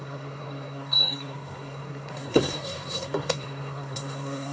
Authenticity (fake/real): fake